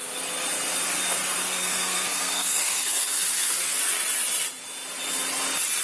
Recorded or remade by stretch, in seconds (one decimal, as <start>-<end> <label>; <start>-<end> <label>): 0.0-1.4 recorded; 1.4-3.8 remade; 3.8-5.8 recorded